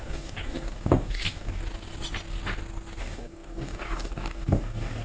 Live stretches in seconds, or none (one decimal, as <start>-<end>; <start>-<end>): 1.6-3.0